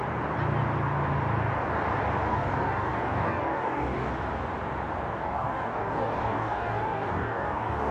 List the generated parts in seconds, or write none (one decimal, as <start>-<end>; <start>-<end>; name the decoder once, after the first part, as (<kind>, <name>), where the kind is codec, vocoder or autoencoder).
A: 2.3-4.1 (codec, DAC); 5.1-7.9